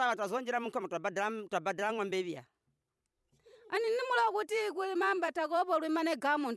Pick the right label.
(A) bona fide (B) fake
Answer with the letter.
B